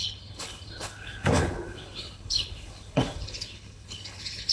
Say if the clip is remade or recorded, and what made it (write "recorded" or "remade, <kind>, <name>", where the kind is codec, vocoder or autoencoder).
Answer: remade, codec, HILCodec